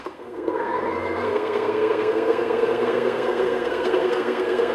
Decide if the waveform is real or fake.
fake